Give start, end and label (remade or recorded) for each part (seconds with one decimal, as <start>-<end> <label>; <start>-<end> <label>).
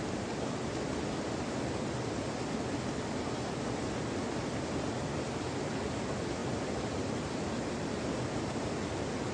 0.0-9.3 recorded